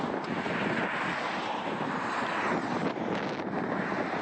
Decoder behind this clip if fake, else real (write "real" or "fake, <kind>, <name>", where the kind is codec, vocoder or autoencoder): real